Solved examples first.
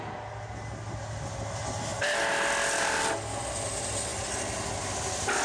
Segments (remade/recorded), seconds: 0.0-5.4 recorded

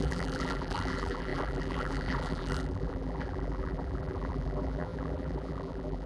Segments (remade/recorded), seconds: 0.0-6.1 remade

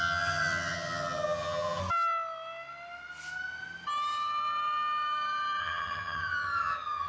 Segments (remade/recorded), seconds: 0.0-1.8 remade; 1.8-5.6 recorded; 5.6-7.1 remade

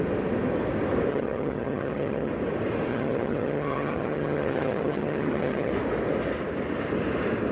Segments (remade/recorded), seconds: 0.0-1.1 recorded; 1.1-2.3 remade; 2.3-2.9 recorded; 2.9-5.7 remade; 5.7-7.5 recorded

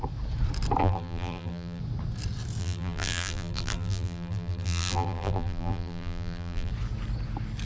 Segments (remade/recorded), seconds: 0.0-0.8 recorded; 0.8-1.8 remade; 1.8-2.6 recorded; 2.6-6.7 remade; 6.7-7.7 recorded

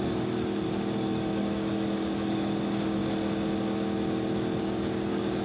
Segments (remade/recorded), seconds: 0.0-3.0 remade; 3.0-4.6 recorded; 4.6-5.4 remade